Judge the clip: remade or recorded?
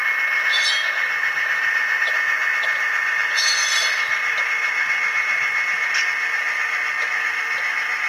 recorded